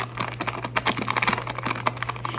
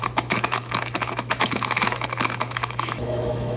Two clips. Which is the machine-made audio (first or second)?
second